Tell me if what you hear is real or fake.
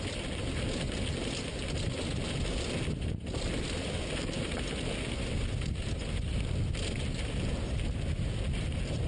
real